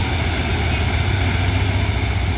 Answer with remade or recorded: recorded